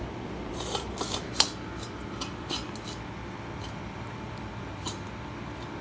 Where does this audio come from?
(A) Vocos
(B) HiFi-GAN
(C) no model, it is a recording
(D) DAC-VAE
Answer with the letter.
C